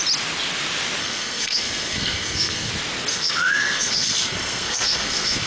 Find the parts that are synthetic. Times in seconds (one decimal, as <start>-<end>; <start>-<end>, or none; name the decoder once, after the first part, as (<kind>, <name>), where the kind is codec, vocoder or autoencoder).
1.0-2.7 (codec, SNAC); 3.1-5.5